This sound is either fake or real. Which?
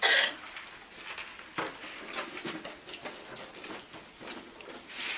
real